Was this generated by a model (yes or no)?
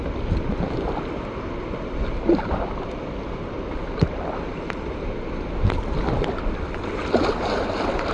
no